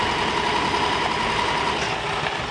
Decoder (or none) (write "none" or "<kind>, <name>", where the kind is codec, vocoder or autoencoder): none